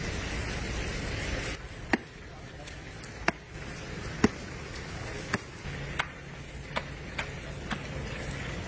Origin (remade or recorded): recorded